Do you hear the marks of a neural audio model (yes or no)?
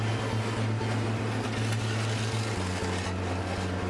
no